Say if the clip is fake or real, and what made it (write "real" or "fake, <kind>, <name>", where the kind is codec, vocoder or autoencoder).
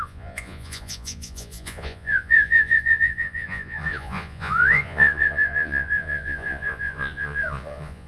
fake, vocoder, Vocos